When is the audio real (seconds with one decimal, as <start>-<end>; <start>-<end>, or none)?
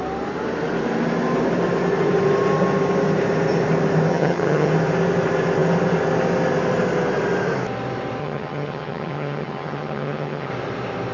0.0-4.1; 4.7-8.2; 10.5-11.1